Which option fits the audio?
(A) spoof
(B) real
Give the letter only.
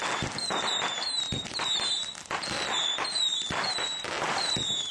B